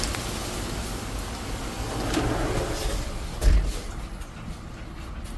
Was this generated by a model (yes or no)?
no